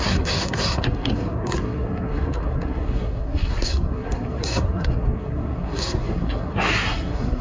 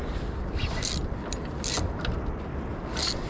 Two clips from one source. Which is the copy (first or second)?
first